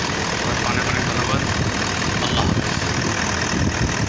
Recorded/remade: recorded